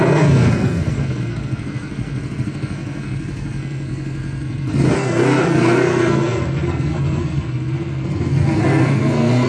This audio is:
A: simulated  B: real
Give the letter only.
A